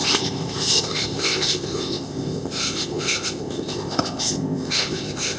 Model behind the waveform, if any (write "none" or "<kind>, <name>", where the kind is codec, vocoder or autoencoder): codec, ZipCodec